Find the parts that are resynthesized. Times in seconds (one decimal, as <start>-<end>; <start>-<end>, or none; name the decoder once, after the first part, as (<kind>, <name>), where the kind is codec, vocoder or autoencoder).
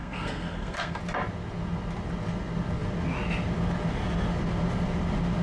0.0-1.0 (codec, SNAC)